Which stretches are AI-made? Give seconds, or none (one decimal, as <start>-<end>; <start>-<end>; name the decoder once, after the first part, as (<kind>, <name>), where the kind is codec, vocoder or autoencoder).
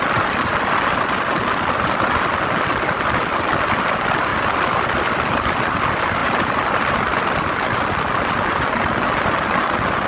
none